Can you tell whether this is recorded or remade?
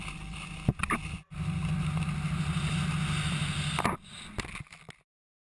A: recorded